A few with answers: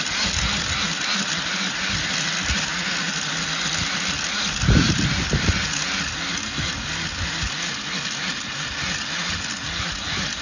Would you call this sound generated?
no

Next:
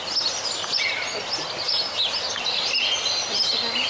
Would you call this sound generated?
no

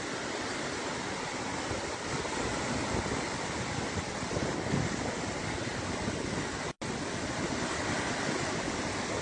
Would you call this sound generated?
no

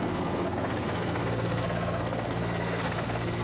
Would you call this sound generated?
yes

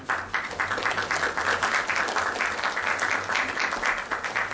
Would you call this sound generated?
no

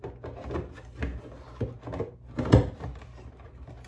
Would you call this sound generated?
no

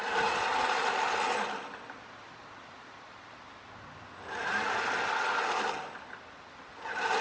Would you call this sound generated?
no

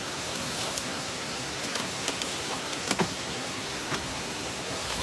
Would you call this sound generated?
yes